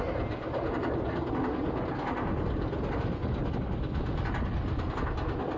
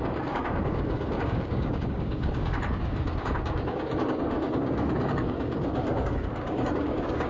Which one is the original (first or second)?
first